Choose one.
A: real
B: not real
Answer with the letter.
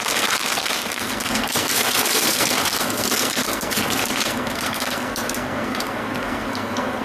B